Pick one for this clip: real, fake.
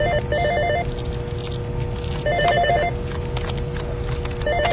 real